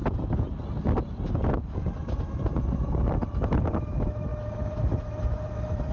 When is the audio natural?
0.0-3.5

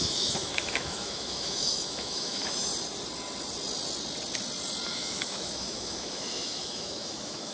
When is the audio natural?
2.7-4.9

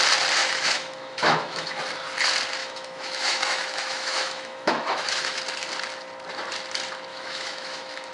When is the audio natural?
0.0-0.4; 1.8-2.6; 5.4-7.1

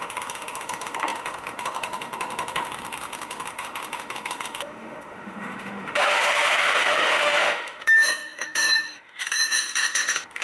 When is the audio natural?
none